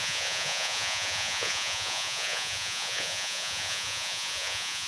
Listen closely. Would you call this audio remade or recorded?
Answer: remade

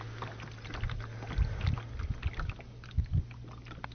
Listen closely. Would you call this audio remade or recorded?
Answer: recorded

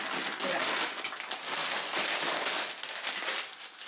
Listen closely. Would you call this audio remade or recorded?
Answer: recorded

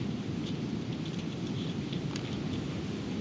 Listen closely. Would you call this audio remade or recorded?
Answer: recorded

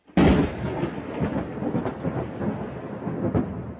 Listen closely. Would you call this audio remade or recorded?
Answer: recorded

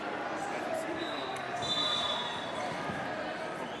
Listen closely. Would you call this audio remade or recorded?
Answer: recorded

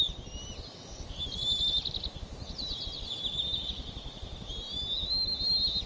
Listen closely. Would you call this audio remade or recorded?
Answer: recorded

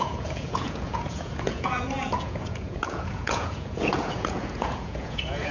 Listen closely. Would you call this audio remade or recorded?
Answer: remade